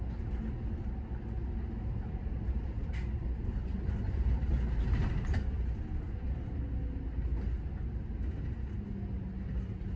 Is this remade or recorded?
recorded